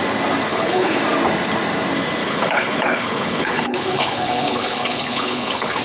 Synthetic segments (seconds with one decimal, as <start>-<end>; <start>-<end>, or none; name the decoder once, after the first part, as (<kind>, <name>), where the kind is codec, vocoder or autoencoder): 0.5-1.0 (codec, HILCodec); 2.2-5.8